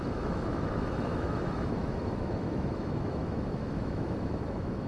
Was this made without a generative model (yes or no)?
no